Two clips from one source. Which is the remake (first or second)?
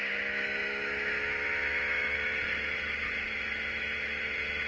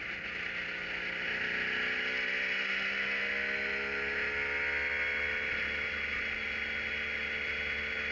first